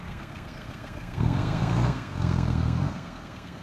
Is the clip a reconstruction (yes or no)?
yes